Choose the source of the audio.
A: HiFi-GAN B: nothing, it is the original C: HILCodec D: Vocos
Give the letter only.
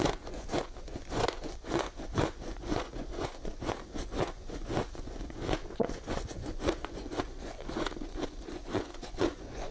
D